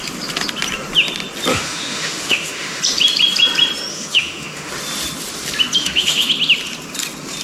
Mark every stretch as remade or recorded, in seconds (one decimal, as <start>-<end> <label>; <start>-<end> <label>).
0.0-1.5 recorded; 1.5-2.8 remade; 2.8-3.9 recorded; 3.9-4.7 remade; 4.7-5.8 recorded; 5.8-6.3 remade; 6.3-7.4 recorded